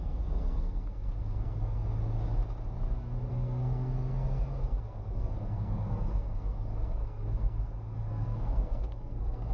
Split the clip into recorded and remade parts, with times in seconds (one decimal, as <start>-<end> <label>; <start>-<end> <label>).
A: 0.0-2.0 remade; 2.0-3.3 recorded; 3.3-9.5 remade